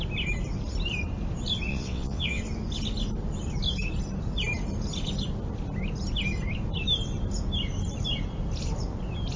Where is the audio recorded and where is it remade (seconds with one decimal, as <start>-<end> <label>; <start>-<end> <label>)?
0.0-1.7 recorded; 1.7-2.4 remade; 2.4-9.4 recorded